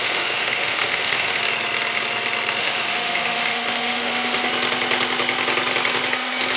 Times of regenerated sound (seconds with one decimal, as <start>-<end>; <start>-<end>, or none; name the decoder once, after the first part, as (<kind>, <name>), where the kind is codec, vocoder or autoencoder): 0.0-1.4 (autoencoder, DAC-VAE); 2.6-4.5